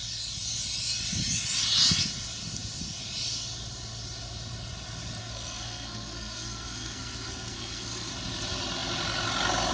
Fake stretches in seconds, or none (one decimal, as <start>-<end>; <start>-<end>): 5.2-8.1